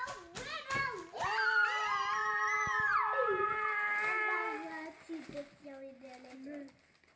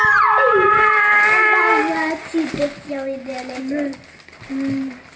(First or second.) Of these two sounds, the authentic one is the first